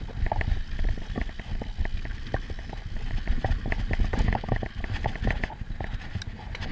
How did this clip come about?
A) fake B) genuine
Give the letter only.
B